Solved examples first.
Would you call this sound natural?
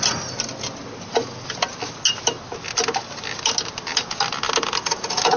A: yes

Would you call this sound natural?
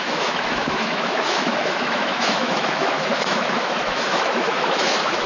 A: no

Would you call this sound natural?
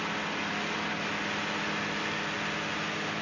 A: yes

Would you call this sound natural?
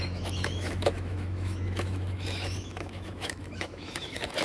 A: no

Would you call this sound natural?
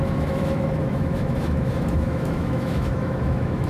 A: no